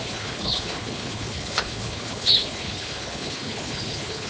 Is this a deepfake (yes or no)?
yes